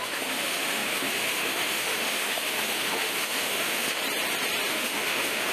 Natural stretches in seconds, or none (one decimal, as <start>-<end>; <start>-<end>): 4.0-4.7